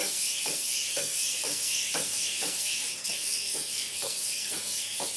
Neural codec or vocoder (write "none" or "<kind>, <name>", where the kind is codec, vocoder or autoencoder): codec, SNAC